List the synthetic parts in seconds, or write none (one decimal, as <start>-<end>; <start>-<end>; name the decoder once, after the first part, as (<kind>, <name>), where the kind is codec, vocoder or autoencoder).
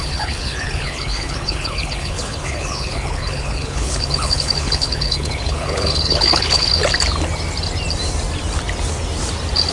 0.0-6.8 (codec, HILCodec)